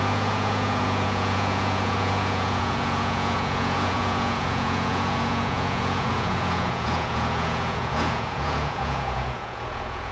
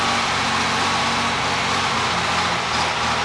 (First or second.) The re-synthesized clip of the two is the first